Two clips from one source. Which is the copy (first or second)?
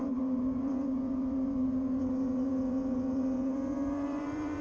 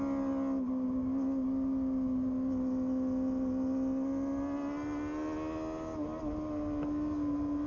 first